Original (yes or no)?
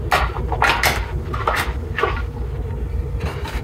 yes